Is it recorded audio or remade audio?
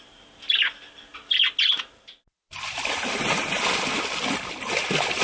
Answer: recorded